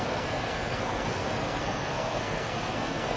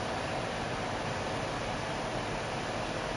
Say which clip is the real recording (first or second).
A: second